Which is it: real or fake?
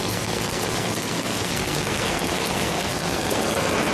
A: fake